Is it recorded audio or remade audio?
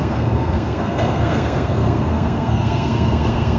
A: remade